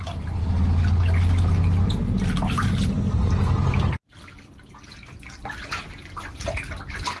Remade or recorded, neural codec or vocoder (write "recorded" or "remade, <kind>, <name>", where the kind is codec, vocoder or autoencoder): recorded